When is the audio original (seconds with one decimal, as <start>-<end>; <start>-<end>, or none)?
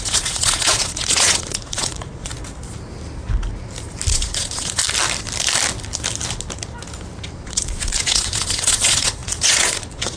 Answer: 2.3-4.1; 4.8-7.3